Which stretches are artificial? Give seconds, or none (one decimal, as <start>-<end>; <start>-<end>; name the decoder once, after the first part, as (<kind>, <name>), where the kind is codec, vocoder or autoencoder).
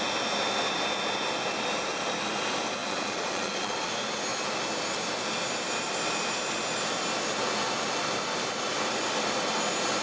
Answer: 2.8-3.9 (vocoder, Vocos)